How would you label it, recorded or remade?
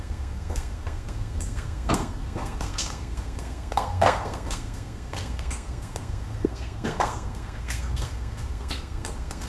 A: remade